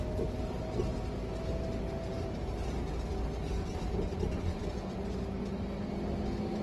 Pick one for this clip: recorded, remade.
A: recorded